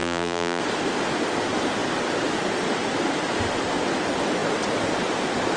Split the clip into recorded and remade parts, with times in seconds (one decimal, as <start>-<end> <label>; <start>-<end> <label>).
0.0-0.6 remade; 0.6-5.6 recorded

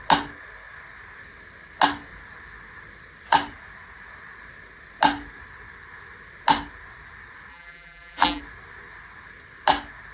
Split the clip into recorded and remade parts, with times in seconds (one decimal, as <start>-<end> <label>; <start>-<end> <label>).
0.0-7.5 recorded; 7.5-8.4 remade; 8.4-10.1 recorded

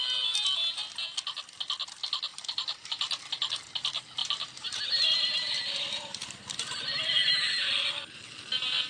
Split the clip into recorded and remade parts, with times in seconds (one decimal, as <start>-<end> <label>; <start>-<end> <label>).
0.0-2.3 recorded; 2.3-3.2 remade; 3.2-4.2 recorded; 4.2-7.1 remade; 7.1-8.9 recorded

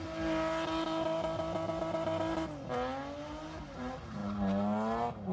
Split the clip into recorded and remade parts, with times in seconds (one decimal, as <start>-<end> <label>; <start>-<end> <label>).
0.0-5.3 recorded

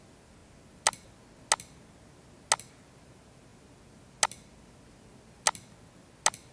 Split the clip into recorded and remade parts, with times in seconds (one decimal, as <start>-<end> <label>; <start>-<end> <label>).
0.0-6.5 recorded

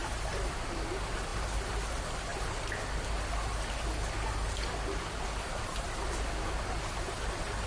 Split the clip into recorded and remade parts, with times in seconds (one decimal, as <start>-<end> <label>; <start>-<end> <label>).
0.0-7.7 recorded

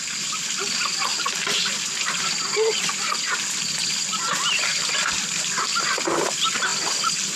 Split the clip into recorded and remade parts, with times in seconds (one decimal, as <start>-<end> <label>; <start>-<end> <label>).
0.0-7.4 recorded

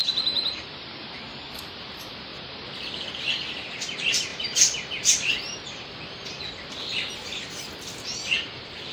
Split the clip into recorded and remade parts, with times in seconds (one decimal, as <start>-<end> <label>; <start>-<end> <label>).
0.0-0.9 remade; 0.9-2.3 recorded; 2.3-3.2 remade; 3.2-8.9 recorded